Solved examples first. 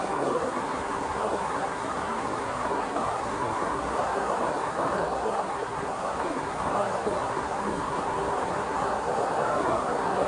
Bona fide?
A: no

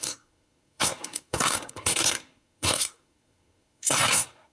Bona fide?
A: no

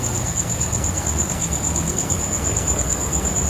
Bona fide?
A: no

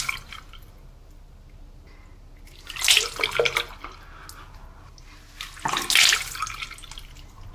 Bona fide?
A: yes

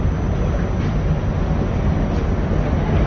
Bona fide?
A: yes